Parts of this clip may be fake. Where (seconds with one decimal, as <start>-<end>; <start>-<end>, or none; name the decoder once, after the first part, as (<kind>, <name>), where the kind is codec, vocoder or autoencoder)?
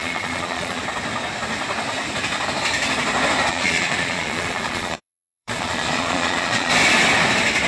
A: 0.0-0.8 (vocoder, Vocos); 3.5-6.7